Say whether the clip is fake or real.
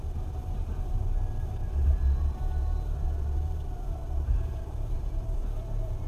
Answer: fake